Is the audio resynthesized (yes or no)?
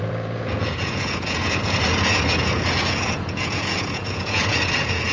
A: yes